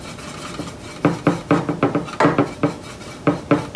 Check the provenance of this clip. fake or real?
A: real